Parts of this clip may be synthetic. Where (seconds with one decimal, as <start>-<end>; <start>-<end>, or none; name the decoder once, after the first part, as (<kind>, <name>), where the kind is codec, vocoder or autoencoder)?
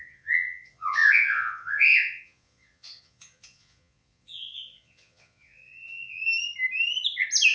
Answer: 0.0-6.2 (vocoder, Vocos)